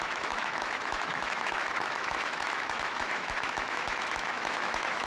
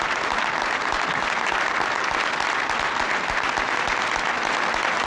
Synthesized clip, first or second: first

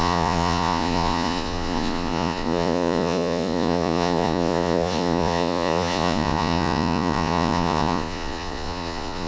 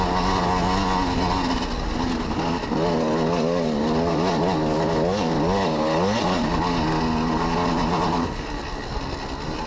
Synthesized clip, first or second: first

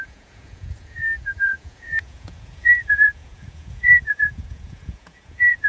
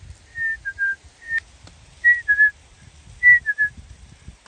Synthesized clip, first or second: first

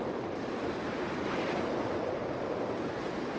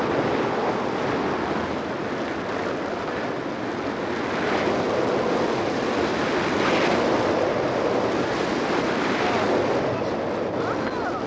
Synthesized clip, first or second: first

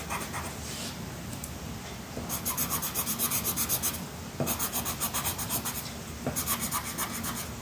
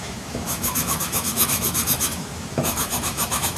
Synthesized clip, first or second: second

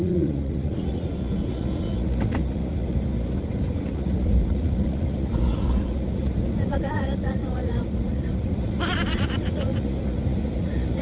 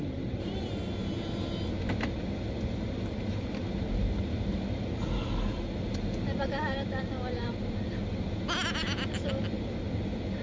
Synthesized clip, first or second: first